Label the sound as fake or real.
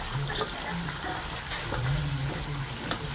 real